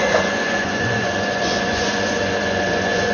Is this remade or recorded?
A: remade